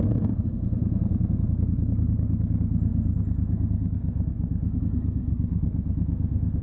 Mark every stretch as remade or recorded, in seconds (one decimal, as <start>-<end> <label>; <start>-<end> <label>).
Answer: 0.0-6.6 remade